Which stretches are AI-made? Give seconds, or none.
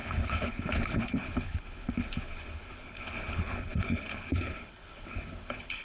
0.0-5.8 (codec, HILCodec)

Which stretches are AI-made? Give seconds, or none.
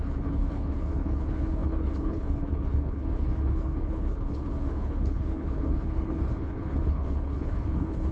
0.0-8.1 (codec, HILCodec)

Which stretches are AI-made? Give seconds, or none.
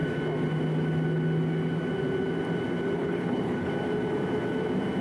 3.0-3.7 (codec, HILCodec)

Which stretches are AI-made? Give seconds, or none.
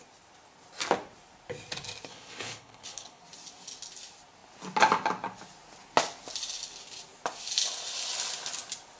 2.1-3.2 (codec, HILCodec)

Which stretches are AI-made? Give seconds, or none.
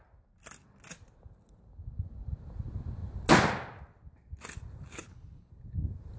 4.9-5.5 (codec, HILCodec)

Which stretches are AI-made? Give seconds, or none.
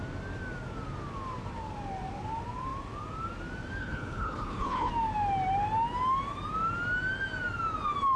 3.8-4.9 (codec, HILCodec)